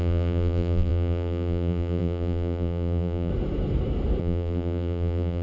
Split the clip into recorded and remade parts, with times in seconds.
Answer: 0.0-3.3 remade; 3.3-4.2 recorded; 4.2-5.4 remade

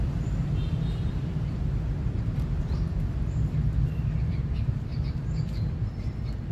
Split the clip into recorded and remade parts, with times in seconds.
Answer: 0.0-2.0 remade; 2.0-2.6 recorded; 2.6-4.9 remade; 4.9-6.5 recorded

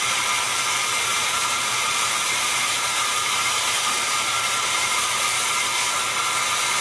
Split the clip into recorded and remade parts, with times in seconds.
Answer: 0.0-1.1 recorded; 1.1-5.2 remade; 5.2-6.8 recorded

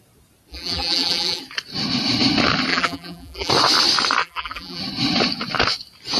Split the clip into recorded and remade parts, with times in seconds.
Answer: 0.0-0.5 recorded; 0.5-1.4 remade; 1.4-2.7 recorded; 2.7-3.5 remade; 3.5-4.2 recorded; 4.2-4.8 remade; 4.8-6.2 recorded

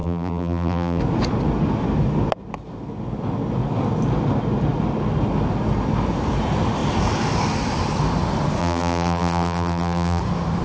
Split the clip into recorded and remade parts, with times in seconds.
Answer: 0.0-1.0 remade; 1.0-8.6 recorded; 8.6-10.2 remade; 10.2-10.6 recorded

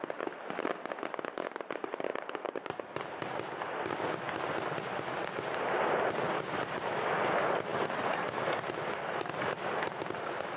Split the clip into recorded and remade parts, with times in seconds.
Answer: 0.0-2.1 recorded; 2.1-3.1 remade; 3.1-10.6 recorded